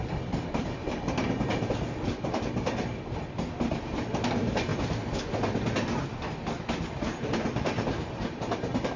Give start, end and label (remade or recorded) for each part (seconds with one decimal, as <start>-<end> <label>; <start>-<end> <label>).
0.0-9.0 recorded

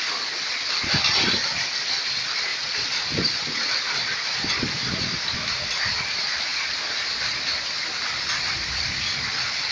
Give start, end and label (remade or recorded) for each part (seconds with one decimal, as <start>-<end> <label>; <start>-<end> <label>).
0.0-9.7 recorded